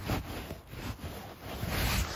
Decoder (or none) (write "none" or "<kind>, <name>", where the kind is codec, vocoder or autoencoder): none